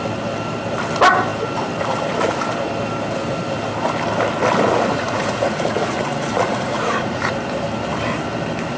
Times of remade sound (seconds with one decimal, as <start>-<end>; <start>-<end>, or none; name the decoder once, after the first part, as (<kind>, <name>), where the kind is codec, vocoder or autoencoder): 4.9-7.3 (vocoder, Vocos)